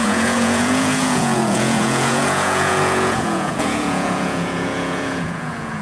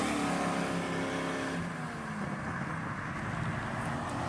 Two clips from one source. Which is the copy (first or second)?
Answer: first